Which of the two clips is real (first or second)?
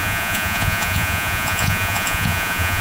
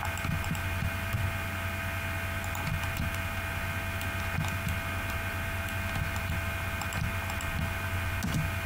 second